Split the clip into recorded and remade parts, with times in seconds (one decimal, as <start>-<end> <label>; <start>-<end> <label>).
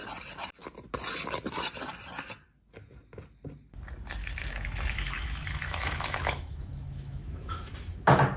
0.0-4.2 recorded; 4.2-7.7 remade; 7.7-8.4 recorded